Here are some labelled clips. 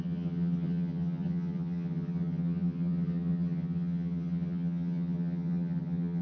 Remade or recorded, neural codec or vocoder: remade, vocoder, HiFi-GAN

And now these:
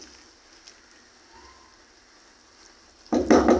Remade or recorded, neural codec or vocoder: recorded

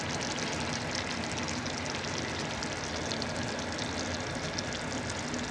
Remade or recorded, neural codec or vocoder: recorded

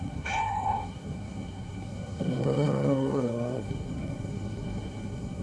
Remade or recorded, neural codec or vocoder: remade, codec, SNAC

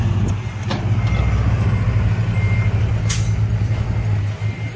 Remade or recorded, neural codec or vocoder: recorded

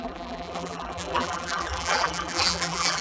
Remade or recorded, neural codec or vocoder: remade, vocoder, BigVGAN v2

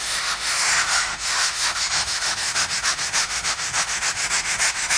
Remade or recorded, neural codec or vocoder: remade, autoencoder, DAC-VAE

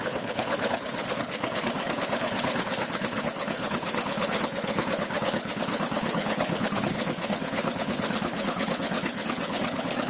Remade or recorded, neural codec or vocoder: remade, codec, HILCodec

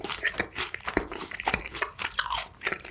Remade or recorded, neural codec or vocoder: remade, vocoder, BigVGAN v2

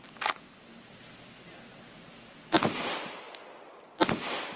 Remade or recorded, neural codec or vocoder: recorded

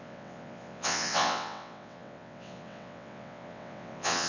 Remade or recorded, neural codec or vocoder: remade, vocoder, WaveNeXt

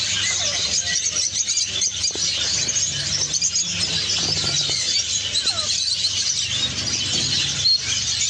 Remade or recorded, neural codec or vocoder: recorded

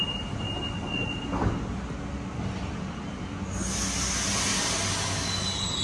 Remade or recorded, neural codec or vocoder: recorded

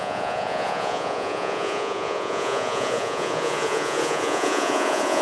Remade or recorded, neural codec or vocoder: remade, vocoder, Vocos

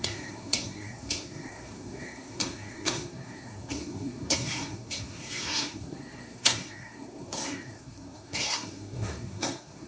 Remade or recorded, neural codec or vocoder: remade, codec, SNAC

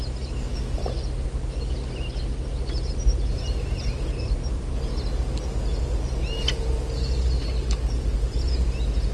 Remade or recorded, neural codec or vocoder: recorded